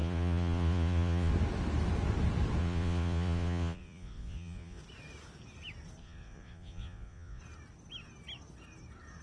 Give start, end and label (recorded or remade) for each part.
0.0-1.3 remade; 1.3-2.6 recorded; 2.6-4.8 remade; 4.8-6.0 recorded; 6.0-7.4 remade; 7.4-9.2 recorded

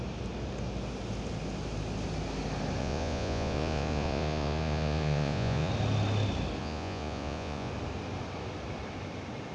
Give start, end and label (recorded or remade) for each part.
0.0-2.8 recorded; 2.8-5.7 remade; 5.7-6.6 recorded; 6.6-7.7 remade; 7.7-9.5 recorded

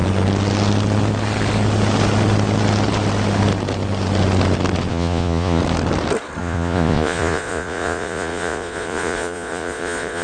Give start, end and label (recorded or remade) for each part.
0.0-4.9 recorded; 4.9-5.6 remade; 5.6-6.4 recorded; 6.4-10.2 remade

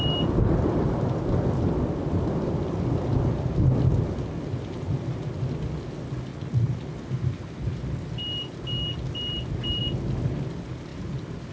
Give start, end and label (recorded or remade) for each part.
0.0-6.3 recorded; 6.3-6.9 remade; 6.9-11.5 recorded

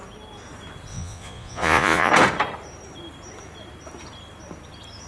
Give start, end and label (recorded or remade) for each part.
0.0-0.9 recorded; 0.9-2.1 remade; 2.1-5.1 recorded

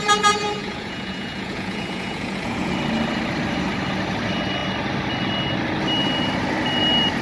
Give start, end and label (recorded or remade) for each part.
0.0-0.6 recorded; 0.6-2.7 remade; 2.7-7.2 recorded